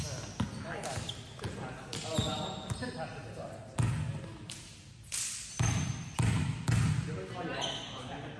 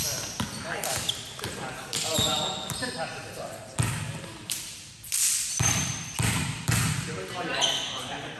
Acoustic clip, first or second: first